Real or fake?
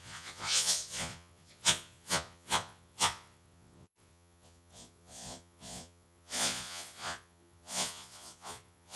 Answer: fake